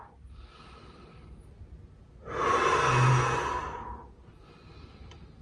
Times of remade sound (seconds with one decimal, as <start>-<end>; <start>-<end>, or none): none